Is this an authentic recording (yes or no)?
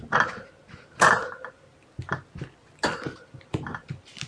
yes